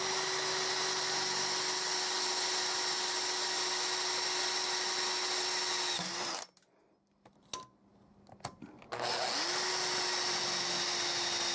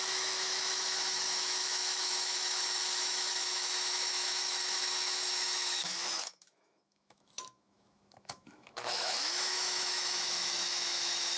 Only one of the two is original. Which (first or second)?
first